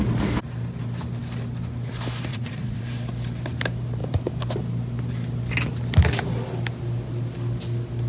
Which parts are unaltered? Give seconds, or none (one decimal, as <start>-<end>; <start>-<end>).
0.0-2.3; 2.8-8.1